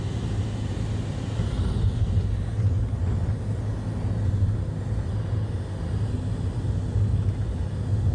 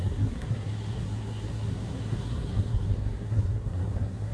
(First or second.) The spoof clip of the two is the second